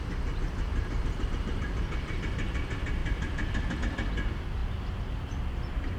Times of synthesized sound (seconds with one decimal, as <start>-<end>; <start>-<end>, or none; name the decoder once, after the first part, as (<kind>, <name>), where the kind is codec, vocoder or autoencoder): 0.7-1.3 (vocoder, BigVGAN v2); 4.6-5.4